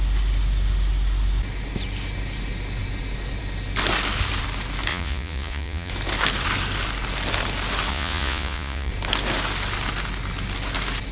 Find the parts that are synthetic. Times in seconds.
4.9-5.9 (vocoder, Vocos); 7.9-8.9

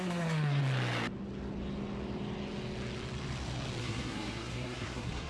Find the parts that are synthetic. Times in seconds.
0.0-0.6 (codec, SNAC); 3.8-5.3